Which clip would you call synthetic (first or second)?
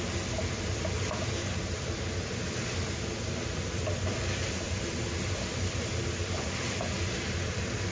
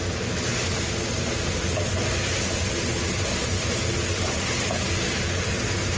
first